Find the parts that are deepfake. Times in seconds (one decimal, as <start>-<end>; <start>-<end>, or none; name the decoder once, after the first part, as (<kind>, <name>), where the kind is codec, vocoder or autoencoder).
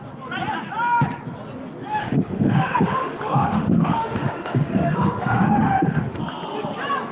1.9-6.2 (autoencoder, DAC-VAE)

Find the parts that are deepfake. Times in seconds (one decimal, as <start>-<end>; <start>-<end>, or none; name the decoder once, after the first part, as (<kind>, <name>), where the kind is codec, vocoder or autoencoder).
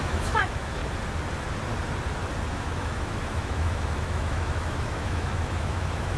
0.0-0.8 (autoencoder, DAC-VAE); 2.5-6.2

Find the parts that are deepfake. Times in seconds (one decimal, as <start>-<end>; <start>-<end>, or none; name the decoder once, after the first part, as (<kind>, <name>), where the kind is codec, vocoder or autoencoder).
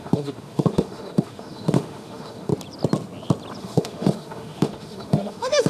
0.0-2.5 (autoencoder, DAC-VAE); 3.6-5.7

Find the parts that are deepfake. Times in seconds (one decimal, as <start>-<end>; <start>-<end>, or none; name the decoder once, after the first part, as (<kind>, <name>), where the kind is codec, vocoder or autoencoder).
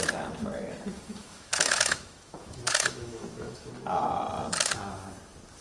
0.9-3.7 (autoencoder, DAC-VAE)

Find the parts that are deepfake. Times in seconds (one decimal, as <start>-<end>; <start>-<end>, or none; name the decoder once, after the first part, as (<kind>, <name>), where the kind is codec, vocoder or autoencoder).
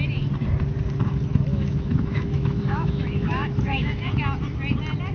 1.5-4.1 (autoencoder, DAC-VAE)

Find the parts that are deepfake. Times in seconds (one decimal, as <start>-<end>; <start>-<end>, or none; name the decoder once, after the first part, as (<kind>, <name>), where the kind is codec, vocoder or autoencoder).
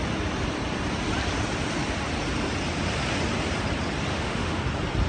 4.1-4.6 (autoencoder, DAC-VAE)